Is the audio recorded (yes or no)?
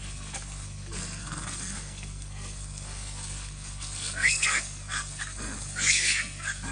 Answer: no